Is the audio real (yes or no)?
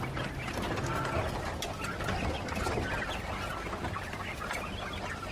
yes